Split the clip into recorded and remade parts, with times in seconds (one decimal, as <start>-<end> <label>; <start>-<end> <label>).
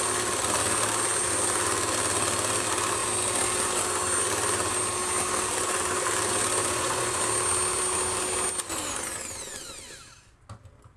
0.0-6.6 recorded; 6.6-7.2 remade; 7.2-11.0 recorded